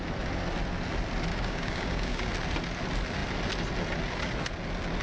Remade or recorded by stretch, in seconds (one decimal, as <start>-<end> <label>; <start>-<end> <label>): 0.0-1.3 recorded; 1.3-2.3 remade; 2.3-5.0 recorded